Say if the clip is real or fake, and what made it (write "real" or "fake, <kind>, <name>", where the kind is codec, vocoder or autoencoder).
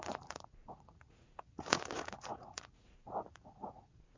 fake, vocoder, Vocos